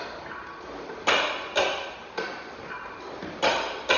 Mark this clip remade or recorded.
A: recorded